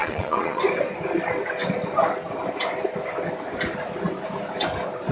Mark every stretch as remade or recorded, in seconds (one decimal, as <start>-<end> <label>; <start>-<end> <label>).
0.0-0.6 remade; 0.6-5.1 recorded